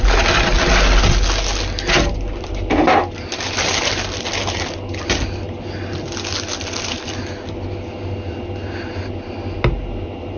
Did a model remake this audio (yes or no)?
no